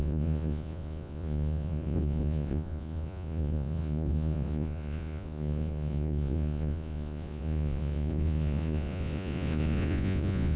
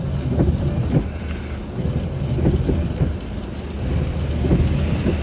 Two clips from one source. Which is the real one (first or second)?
second